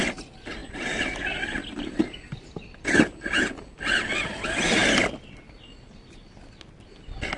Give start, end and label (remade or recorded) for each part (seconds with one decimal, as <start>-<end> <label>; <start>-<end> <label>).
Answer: 0.0-7.4 recorded